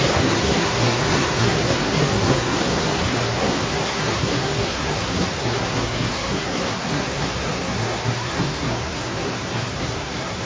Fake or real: fake